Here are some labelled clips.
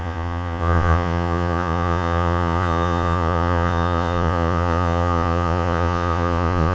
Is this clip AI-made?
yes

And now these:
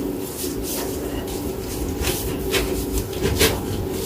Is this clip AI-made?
no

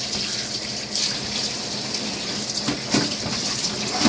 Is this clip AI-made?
yes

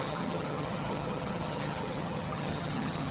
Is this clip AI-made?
yes